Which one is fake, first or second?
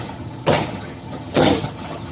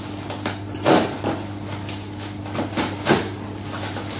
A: first